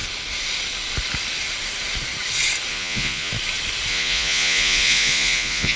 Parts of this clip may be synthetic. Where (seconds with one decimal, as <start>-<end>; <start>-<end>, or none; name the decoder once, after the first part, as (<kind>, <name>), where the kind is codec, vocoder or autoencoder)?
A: 2.7-3.3 (vocoder, Vocos); 3.9-5.8